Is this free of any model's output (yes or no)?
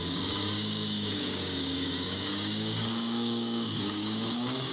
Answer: no